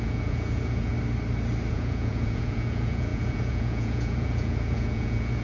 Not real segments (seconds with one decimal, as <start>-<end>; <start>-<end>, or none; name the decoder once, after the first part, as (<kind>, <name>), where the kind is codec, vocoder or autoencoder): 0.0-0.9 (vocoder, Vocos); 1.7-5.4